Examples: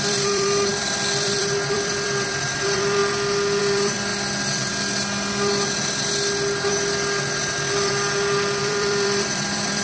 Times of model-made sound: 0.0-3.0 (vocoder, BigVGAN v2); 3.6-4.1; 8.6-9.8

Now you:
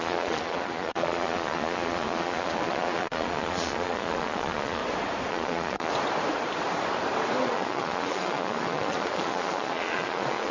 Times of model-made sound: 0.0-4.8 (vocoder, Vocos); 5.3-5.9; 7.4-10.5

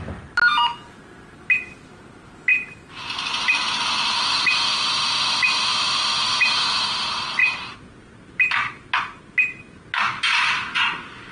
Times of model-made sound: none